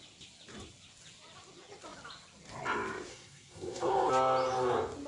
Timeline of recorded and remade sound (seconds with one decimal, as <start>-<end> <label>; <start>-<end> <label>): 0.0-3.1 recorded; 3.1-4.1 remade; 4.1-5.1 recorded